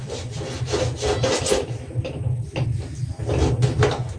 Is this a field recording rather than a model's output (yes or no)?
yes